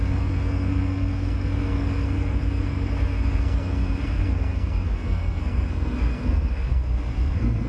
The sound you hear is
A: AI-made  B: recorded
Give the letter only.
A